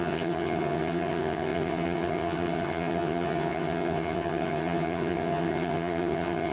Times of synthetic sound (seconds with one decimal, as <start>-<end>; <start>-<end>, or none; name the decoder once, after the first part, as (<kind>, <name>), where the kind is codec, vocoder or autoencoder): 0.0-6.5 (vocoder, HiFi-GAN)